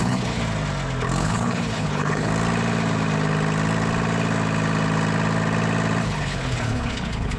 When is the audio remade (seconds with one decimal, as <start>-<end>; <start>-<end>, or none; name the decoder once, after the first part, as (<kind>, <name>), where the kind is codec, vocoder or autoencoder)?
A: 0.0-0.4 (codec, HILCodec); 1.2-2.3; 6.0-7.4